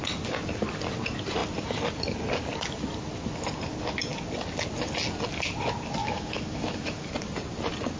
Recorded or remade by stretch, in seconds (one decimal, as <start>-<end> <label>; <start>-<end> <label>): 0.0-6.0 recorded; 6.0-7.1 remade; 7.1-8.0 recorded